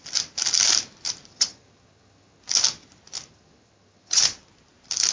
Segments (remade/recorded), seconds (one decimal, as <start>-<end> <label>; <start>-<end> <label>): 0.0-1.3 recorded; 1.3-2.4 remade; 2.4-3.3 recorded; 3.3-4.2 remade; 4.2-5.1 recorded